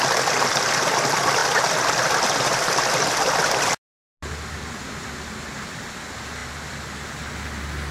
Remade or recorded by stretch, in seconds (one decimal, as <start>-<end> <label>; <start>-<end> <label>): 0.0-7.9 recorded